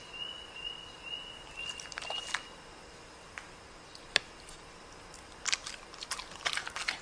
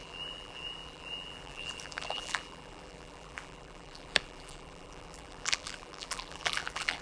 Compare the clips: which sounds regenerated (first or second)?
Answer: second